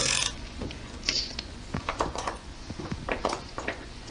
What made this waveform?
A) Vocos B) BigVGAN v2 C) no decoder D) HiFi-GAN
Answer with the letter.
A